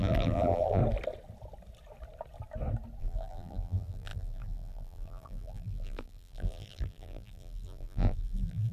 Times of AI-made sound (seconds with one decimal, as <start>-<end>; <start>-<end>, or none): 0.0-0.8; 3.0-8.7